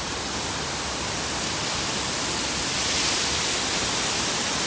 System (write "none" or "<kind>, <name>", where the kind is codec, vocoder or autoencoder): none